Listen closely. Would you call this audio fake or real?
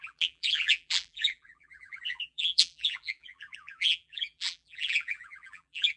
fake